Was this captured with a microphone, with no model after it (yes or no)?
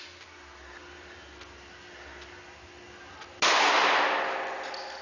yes